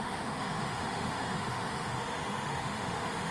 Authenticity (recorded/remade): remade